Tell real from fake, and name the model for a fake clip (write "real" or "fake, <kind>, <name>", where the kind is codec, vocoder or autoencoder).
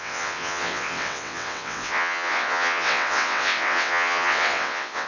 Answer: fake, vocoder, WaveNeXt